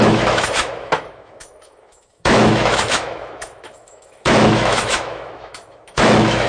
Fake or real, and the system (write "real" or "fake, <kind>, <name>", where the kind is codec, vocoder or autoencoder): fake, autoencoder, DAC-VAE